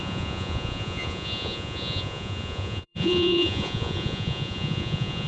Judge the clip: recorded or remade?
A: remade